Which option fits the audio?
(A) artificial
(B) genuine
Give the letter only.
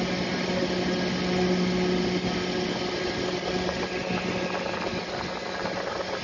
B